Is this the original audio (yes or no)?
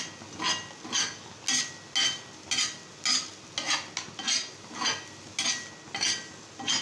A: yes